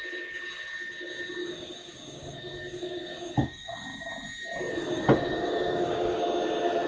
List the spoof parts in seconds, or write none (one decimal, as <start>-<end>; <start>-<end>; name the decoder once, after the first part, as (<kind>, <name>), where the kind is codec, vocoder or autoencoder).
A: 1.4-4.1 (codec, DAC); 4.8-6.2